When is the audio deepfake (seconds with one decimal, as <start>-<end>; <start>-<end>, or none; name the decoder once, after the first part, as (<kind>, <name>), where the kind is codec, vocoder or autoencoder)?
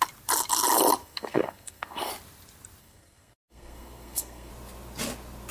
1.0-2.1 (codec, SNAC); 2.8-4.5